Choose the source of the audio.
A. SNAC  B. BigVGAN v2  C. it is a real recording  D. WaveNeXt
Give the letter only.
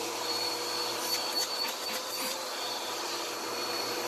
B